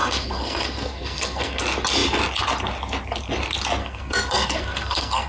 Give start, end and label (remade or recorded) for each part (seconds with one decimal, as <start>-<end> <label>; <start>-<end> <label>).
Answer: 0.0-1.6 remade; 1.6-3.8 recorded; 3.8-5.3 remade